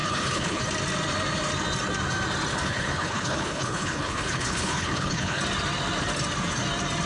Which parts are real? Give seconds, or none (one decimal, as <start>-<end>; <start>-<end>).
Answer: 0.6-2.5; 5.4-7.1